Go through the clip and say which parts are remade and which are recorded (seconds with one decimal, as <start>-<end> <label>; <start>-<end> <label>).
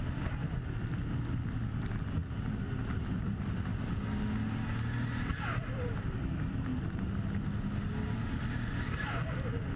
0.0-9.8 recorded